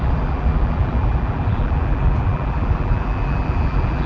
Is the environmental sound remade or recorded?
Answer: remade